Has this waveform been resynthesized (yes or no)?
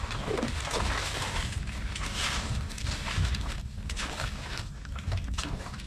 yes